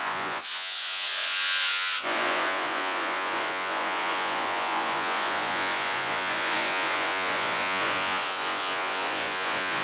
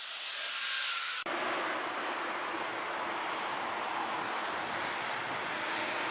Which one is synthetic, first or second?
first